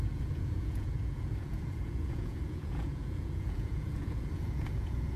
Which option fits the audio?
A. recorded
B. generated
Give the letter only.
B